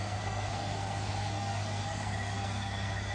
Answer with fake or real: fake